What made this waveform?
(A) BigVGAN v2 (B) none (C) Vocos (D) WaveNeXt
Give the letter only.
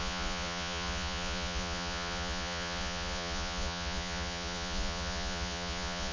C